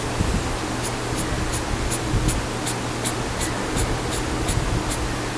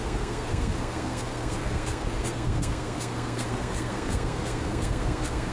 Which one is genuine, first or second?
first